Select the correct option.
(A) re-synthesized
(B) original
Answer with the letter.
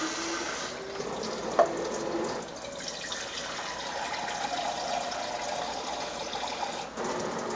B